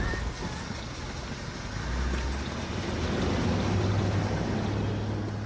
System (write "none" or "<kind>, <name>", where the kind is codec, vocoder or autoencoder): none